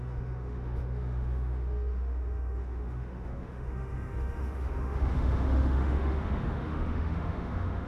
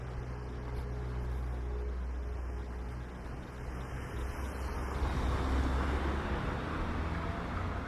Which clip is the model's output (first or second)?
first